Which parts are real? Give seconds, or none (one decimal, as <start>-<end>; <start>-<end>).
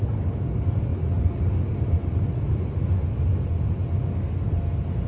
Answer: 0.0-5.1